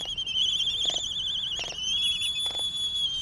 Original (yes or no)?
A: yes